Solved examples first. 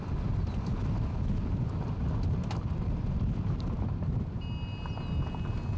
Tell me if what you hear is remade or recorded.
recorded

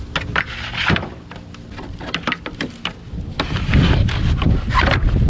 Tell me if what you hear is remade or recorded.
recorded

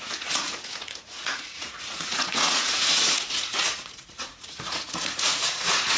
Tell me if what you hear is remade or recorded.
remade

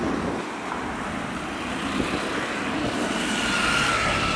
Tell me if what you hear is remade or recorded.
recorded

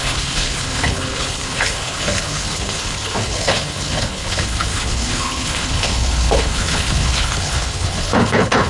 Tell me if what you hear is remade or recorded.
remade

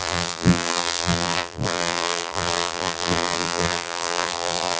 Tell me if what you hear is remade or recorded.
remade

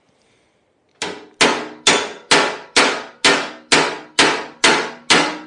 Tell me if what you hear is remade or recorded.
recorded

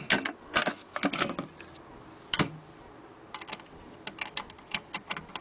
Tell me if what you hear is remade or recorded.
recorded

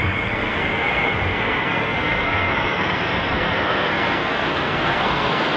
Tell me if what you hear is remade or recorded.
remade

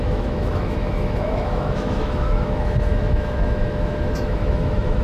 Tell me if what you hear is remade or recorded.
remade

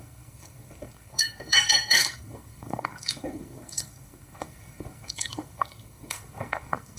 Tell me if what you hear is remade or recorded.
remade